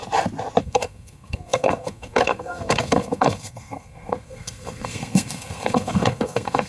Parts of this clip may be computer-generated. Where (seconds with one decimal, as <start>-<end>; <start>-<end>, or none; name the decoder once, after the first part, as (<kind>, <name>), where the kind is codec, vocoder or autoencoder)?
0.6-6.7 (codec, SNAC)